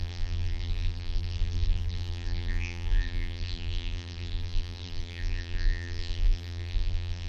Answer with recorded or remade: remade